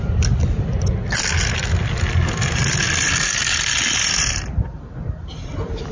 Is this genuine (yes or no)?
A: yes